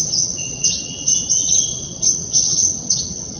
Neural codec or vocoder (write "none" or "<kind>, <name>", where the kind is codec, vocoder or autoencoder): vocoder, WaveNeXt